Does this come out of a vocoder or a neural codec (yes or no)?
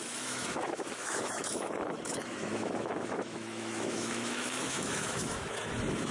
yes